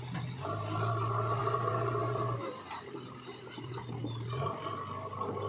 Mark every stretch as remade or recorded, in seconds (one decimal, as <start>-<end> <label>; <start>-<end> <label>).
0.0-1.4 recorded; 1.4-4.7 remade; 4.7-5.5 recorded